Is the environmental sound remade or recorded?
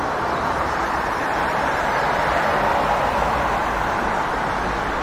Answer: remade